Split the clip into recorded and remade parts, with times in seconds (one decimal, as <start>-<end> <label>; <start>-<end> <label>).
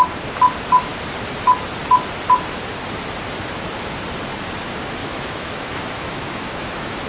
0.0-5.0 recorded; 5.0-7.1 remade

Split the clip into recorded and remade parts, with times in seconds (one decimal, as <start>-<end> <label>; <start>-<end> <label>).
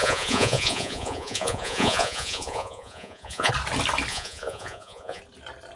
0.0-3.5 remade; 3.5-4.1 recorded; 4.1-5.2 remade; 5.2-5.8 recorded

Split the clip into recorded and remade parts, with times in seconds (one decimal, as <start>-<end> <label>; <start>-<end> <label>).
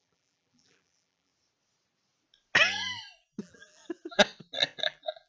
0.0-1.3 remade; 1.3-3.4 recorded; 3.4-3.8 remade; 3.8-4.8 recorded; 4.8-5.3 remade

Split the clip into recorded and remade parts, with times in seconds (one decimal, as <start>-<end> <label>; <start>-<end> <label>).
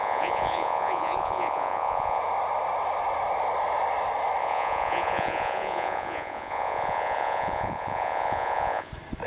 0.0-2.2 remade; 2.2-4.4 recorded; 4.4-8.9 remade; 8.9-9.3 recorded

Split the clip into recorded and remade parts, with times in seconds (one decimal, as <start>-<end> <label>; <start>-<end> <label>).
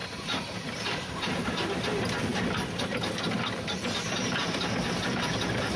0.0-5.8 recorded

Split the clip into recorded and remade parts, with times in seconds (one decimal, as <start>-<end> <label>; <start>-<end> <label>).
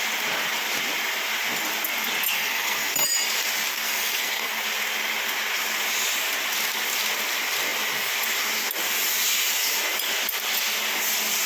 0.0-2.3 recorded; 2.3-2.9 remade; 2.9-3.7 recorded; 3.7-4.6 remade; 4.6-11.5 recorded